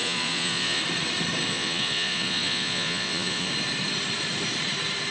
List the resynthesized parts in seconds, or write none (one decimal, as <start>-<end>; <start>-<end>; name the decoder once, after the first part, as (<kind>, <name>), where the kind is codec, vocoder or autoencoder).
0.0-0.8 (vocoder, Vocos); 1.5-3.5

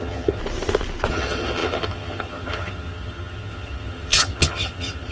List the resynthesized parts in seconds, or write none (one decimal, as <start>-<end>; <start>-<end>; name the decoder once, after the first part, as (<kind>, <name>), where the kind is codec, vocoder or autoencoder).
0.0-0.4 (vocoder, HiFi-GAN); 1.1-5.1